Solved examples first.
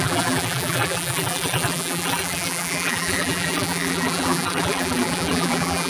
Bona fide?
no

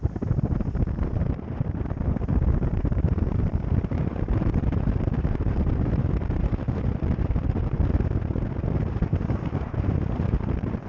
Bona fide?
no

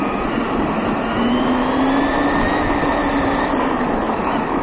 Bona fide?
yes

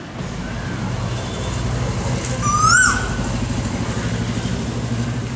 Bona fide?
yes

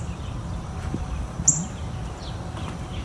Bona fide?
no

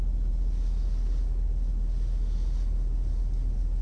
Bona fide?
yes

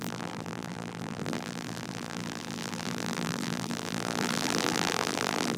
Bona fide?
no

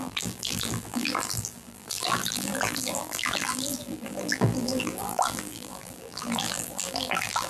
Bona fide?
no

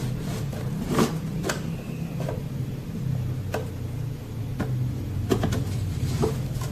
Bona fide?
yes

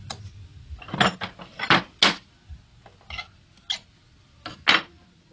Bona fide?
yes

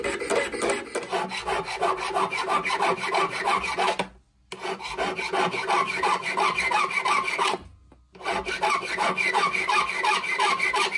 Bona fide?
yes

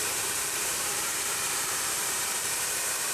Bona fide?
no